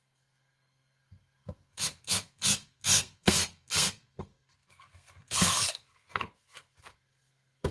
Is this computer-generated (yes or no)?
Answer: yes